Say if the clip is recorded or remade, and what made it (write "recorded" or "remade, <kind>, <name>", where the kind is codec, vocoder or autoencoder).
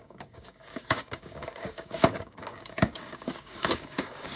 remade, codec, DAC